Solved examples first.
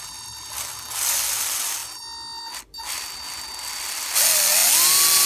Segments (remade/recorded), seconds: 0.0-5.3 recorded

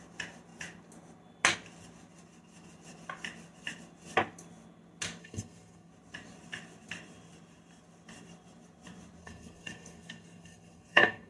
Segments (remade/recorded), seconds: 0.0-5.2 recorded; 5.2-5.9 remade; 5.9-9.2 recorded; 9.2-11.3 remade

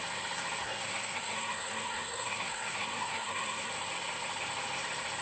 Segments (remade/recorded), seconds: 0.0-0.6 recorded; 0.6-3.7 remade; 3.7-5.2 recorded

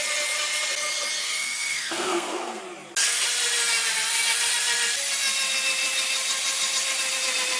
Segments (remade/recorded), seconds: 0.0-1.2 recorded; 1.2-2.6 remade; 2.6-7.6 recorded

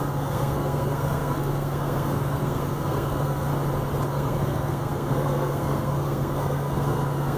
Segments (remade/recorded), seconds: 0.0-3.5 remade; 3.5-4.1 recorded; 4.1-7.4 remade